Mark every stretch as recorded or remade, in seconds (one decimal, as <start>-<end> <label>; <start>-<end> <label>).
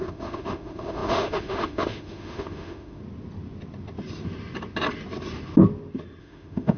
0.0-3.0 remade; 3.0-6.2 recorded; 6.2-6.8 remade